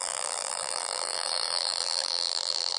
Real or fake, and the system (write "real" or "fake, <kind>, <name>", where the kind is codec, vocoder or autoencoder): fake, vocoder, BigVGAN v2